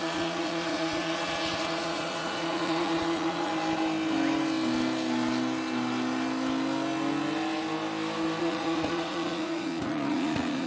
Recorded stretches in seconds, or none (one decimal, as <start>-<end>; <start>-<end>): 3.5-8.4